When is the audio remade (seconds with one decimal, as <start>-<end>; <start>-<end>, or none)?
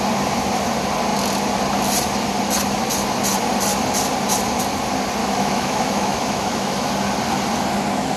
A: 5.2-6.9